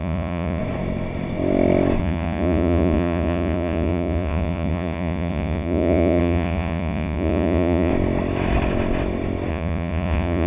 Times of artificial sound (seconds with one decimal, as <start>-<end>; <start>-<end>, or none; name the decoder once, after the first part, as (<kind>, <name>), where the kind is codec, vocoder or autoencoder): 0.0-0.6 (vocoder, Vocos); 2.0-7.9; 9.5-10.5